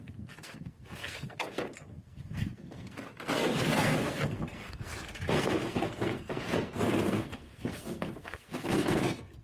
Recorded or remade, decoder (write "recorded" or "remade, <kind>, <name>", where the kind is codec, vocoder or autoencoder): remade, codec, SNAC